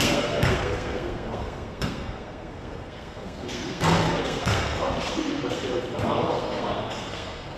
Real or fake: fake